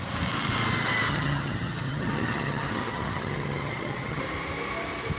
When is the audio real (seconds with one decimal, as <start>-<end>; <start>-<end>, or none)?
0.0-1.1; 4.2-5.2